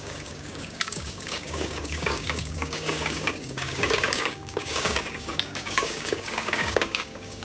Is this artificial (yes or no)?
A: yes